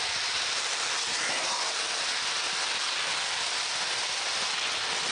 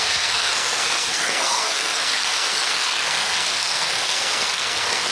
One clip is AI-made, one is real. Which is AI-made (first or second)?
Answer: second